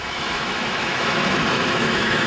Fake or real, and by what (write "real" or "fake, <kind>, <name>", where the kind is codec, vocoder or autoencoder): fake, autoencoder, DAC-VAE